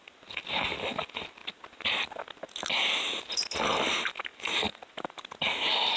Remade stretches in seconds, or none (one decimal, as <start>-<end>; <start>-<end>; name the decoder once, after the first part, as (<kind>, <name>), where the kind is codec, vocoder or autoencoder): none